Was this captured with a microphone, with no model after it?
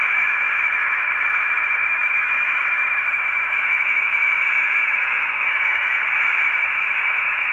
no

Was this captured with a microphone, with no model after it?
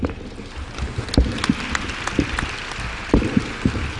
yes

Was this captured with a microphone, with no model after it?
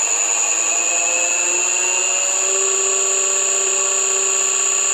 yes